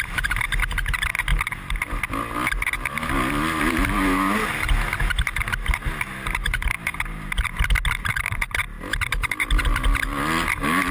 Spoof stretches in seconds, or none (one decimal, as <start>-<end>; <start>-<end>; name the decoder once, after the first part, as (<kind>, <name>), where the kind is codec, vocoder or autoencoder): none